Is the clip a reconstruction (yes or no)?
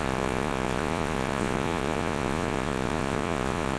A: yes